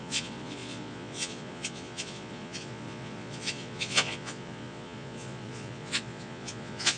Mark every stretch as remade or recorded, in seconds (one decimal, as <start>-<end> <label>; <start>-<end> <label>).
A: 0.0-7.0 remade